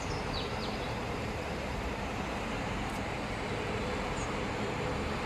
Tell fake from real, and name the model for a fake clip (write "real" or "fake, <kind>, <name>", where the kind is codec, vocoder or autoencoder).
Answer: fake, vocoder, BigVGAN v2